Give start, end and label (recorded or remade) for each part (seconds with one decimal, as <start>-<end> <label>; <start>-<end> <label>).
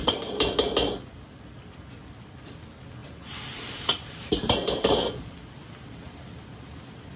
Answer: 0.0-3.0 recorded; 3.0-5.1 remade; 5.1-7.2 recorded